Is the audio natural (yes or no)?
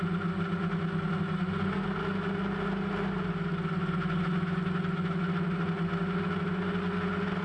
yes